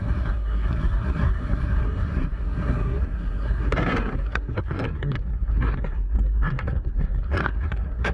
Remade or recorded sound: remade